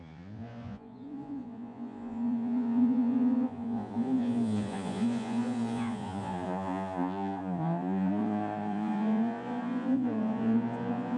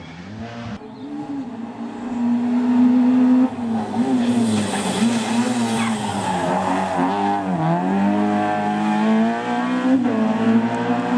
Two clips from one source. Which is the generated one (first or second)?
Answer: first